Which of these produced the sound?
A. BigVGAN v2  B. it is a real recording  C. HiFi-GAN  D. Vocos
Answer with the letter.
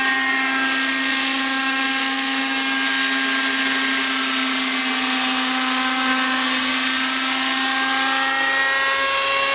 B